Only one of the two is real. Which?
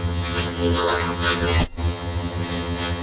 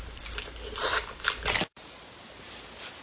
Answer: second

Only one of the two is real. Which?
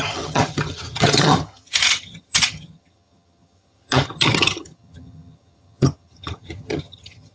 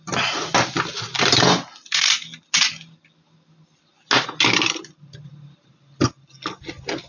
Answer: second